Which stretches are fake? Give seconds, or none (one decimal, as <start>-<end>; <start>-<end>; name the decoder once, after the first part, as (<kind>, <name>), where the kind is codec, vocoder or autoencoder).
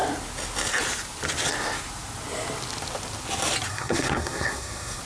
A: 3.7-5.0 (codec, SNAC)